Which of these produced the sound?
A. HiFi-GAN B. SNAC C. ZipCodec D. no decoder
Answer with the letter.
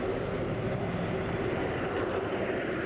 D